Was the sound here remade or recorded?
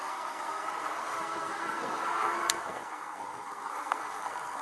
remade